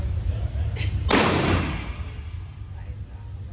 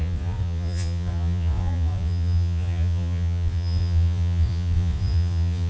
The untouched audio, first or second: first